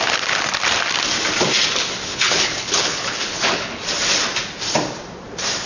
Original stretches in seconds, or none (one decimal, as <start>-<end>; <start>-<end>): 0.0-2.1; 3.8-5.7